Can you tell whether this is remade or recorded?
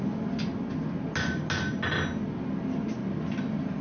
recorded